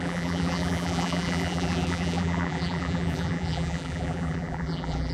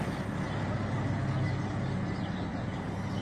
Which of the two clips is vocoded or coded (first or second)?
first